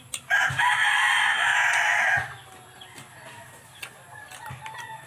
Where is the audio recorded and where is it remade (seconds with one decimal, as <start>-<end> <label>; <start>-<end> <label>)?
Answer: 0.0-5.1 recorded